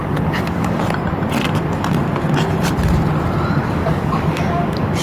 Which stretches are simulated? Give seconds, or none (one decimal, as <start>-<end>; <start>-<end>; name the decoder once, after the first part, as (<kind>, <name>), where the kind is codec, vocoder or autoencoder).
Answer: 0.0-0.8 (codec, DAC); 3.6-5.0